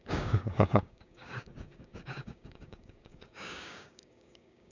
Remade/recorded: remade